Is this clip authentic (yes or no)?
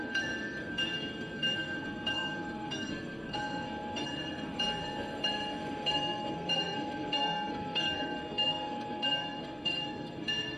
no